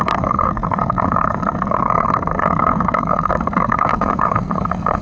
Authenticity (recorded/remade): remade